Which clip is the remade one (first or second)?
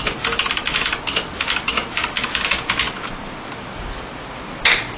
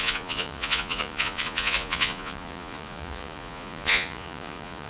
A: second